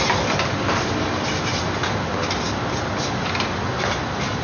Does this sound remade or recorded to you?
recorded